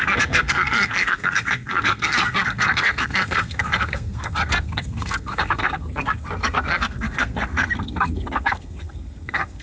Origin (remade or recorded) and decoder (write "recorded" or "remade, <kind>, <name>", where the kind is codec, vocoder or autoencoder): remade, codec, SNAC